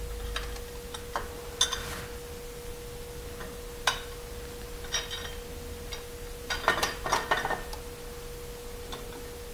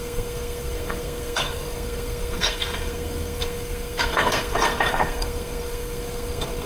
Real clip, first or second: first